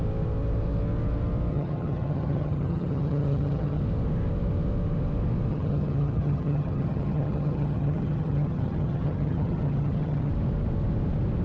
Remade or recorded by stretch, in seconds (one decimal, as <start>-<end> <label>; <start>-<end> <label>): 0.0-1.5 recorded; 1.5-3.8 remade; 3.8-5.5 recorded; 5.5-10.3 remade; 10.3-11.4 recorded